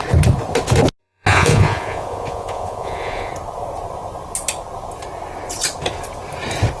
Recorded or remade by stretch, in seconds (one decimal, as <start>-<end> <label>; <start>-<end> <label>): 0.0-1.0 recorded; 1.0-3.3 remade; 3.3-6.8 recorded